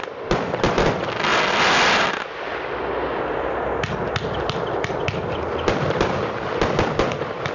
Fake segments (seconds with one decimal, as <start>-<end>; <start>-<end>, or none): none